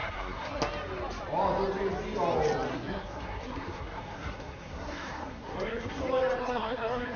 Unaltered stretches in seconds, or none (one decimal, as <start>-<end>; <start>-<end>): 0.6-2.7; 6.0-6.4